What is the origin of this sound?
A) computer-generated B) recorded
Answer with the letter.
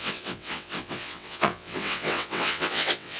A